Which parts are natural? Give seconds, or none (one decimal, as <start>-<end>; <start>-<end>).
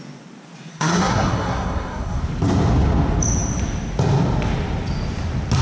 0.0-0.7; 2.2-5.6